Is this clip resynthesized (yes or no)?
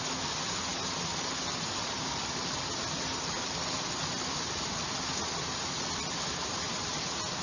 no